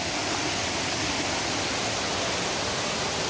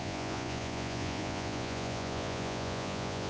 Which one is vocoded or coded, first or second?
second